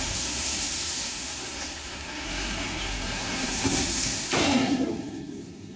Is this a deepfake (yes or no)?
yes